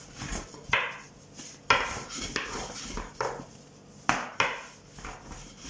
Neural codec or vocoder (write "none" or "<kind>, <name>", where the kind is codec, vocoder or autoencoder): none